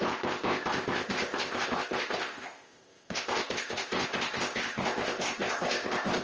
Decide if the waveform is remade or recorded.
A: remade